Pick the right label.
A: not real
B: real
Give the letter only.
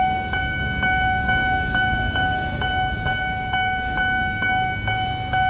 A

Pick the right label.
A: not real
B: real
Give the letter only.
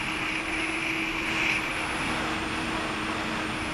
B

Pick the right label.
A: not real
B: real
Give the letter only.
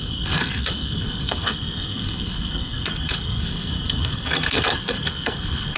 A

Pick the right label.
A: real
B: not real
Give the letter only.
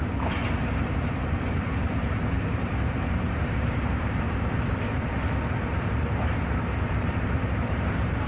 B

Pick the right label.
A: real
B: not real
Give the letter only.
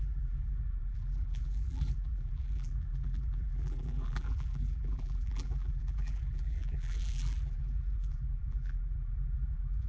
B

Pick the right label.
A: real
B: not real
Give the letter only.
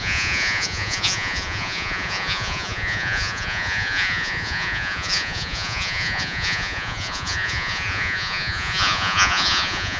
B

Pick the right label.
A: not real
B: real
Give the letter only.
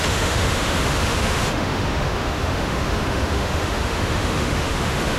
A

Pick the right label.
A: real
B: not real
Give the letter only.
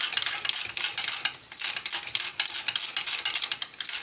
A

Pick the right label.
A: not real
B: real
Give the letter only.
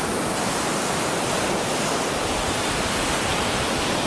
B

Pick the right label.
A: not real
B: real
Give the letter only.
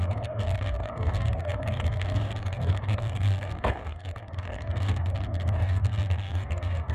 A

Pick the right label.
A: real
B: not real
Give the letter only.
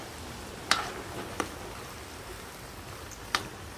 A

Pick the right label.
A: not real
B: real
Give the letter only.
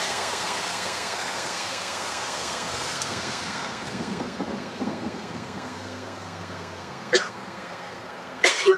A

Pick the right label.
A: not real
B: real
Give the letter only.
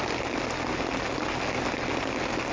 B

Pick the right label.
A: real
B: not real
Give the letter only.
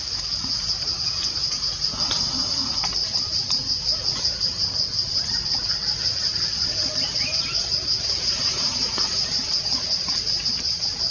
B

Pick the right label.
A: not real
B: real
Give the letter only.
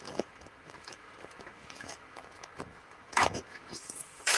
A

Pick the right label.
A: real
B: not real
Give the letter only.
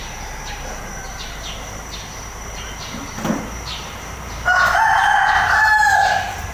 B